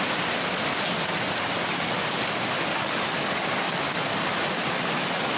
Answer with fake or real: real